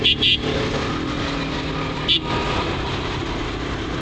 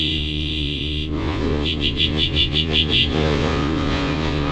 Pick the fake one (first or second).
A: second